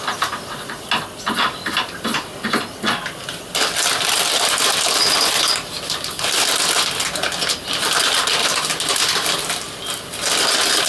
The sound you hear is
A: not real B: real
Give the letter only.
B